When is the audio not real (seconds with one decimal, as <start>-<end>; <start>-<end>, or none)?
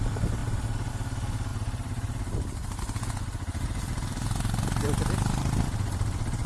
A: 0.4-0.9; 1.5-2.8